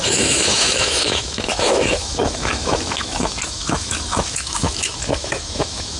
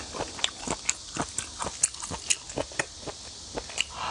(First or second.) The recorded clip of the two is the second